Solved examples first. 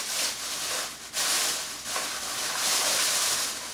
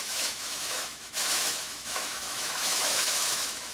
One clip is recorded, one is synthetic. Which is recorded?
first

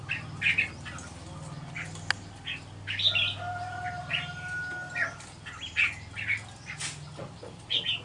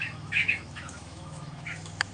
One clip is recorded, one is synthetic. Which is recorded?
first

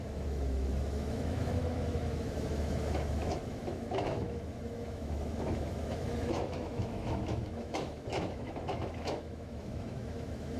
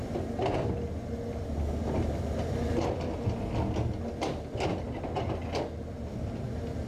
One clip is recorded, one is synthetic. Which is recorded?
second